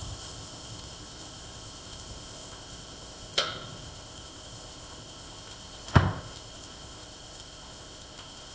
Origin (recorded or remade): remade